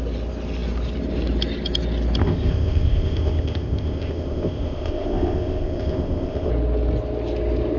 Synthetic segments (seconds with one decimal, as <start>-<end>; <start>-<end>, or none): 2.2-6.5